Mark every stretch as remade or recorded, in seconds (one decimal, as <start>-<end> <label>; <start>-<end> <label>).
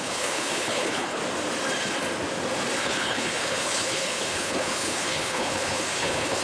0.0-1.2 remade; 1.2-2.8 recorded; 2.8-6.4 remade